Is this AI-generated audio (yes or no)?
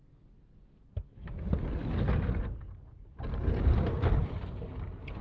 no